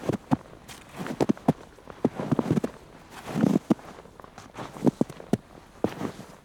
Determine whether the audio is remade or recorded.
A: recorded